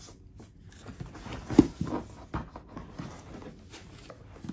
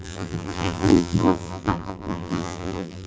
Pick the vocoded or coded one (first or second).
second